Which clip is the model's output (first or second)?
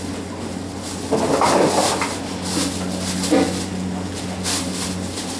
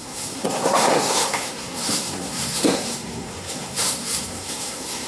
second